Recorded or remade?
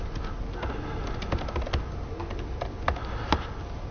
recorded